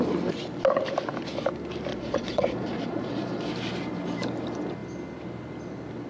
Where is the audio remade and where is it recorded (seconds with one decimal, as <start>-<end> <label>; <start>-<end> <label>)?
0.0-1.9 recorded; 1.9-3.5 remade; 3.5-6.1 recorded